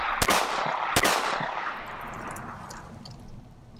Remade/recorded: recorded